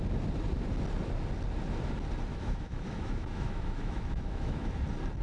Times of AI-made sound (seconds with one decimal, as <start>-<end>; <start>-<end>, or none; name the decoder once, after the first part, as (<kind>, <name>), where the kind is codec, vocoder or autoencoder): 2.3-4.7 (autoencoder, DAC-VAE)